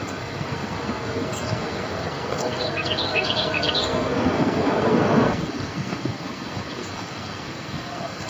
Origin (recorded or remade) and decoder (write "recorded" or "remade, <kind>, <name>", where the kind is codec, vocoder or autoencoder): remade, codec, SNAC